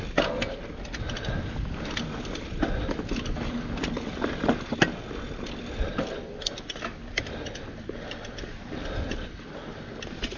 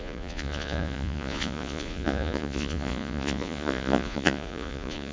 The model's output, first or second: second